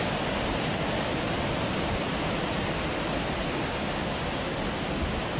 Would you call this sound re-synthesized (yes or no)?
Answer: no